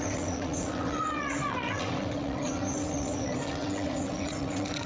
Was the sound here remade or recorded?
remade